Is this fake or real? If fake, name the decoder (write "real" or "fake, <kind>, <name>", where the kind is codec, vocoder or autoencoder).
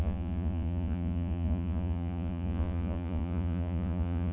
fake, vocoder, Vocos